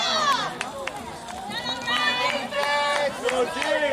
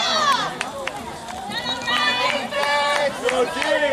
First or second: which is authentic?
first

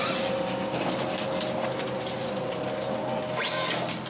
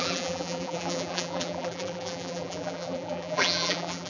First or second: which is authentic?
first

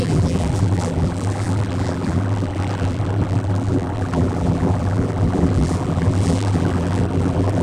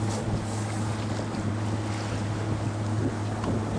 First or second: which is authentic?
second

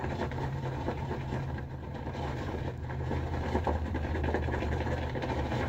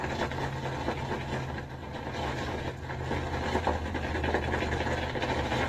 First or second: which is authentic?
second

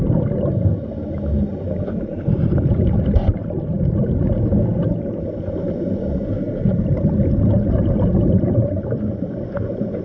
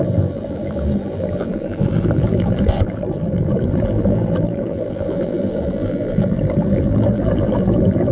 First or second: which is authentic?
first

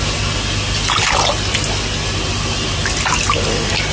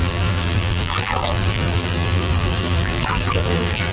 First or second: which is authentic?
first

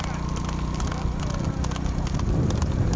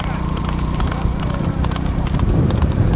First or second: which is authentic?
first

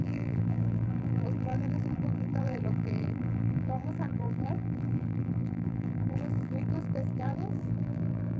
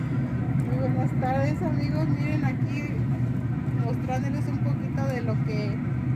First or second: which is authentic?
second